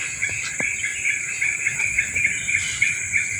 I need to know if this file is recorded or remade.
recorded